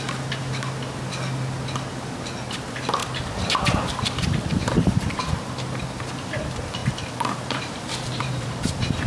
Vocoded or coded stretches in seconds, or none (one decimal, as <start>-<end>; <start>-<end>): 3.0-5.2; 6.8-9.1